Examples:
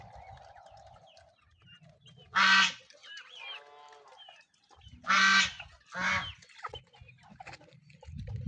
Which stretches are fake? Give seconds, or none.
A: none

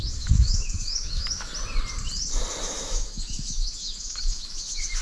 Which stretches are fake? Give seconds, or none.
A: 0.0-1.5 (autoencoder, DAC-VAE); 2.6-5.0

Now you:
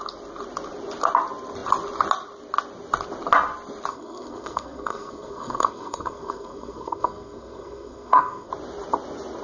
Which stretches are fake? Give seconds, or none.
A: 3.9-8.5 (codec, SNAC)

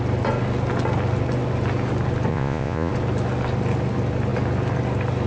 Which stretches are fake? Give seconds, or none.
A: 2.3-2.9 (vocoder, Vocos)

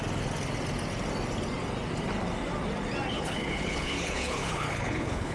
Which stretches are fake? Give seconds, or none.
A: 3.1-5.3 (codec, HILCodec)

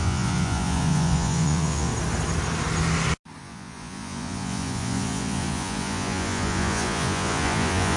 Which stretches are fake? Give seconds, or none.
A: 0.0-1.9 (vocoder, Vocos); 3.4-8.0

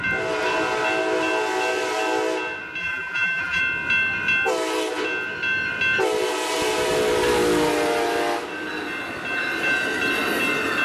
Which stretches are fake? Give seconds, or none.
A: 2.8-3.6 (vocoder, BigVGAN v2)

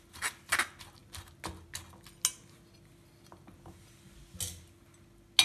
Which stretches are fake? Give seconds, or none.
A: none